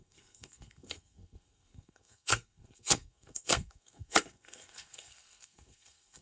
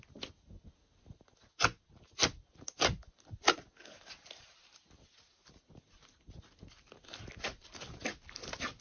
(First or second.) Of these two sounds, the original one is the second